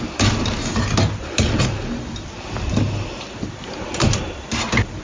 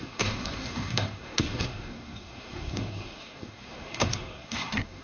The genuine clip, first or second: first